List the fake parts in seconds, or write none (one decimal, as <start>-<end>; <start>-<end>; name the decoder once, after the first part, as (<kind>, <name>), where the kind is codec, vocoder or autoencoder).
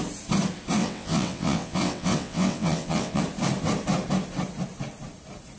0.8-3.2 (vocoder, WaveNeXt)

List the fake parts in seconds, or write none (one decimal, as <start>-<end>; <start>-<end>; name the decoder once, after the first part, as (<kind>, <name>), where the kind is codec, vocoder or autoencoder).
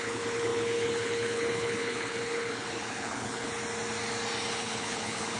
0.0-3.6 (codec, HILCodec); 4.5-5.4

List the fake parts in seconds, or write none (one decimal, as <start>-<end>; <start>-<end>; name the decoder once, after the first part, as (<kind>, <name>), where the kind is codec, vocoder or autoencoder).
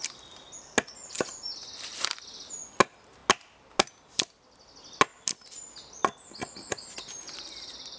none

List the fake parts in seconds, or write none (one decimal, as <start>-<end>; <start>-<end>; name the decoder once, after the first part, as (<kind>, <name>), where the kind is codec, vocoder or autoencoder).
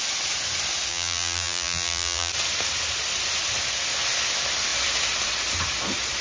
0.9-2.3 (vocoder, BigVGAN v2)